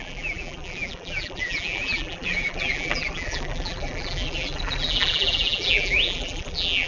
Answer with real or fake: fake